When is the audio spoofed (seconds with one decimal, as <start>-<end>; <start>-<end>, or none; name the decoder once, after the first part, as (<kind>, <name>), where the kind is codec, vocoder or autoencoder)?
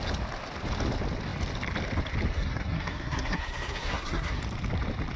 2.3-4.4 (codec, SNAC)